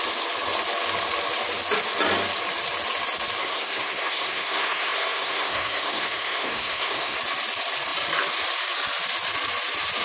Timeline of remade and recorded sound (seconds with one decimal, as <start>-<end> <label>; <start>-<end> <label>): 0.0-3.4 recorded; 3.4-7.2 remade; 7.2-10.0 recorded